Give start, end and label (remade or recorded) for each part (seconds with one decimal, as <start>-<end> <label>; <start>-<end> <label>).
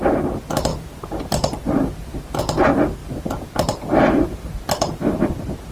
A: 0.0-0.7 recorded; 0.7-2.4 remade; 2.4-3.0 recorded; 3.0-5.3 remade; 5.3-5.7 recorded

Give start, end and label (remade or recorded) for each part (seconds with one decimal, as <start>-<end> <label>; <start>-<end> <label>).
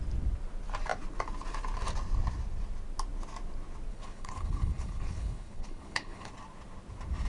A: 0.0-3.9 recorded; 3.9-6.3 remade; 6.3-7.3 recorded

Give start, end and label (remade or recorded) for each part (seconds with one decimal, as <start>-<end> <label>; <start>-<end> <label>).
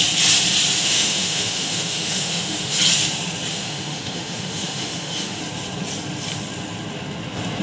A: 0.0-0.8 recorded; 0.8-2.8 remade; 2.8-3.5 recorded; 3.5-5.4 remade; 5.4-7.6 recorded